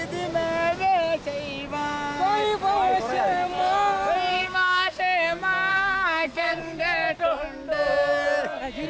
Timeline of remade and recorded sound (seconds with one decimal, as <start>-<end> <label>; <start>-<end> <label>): 0.0-4.3 recorded; 4.3-5.0 remade; 5.0-5.7 recorded; 5.7-6.6 remade; 6.6-8.9 recorded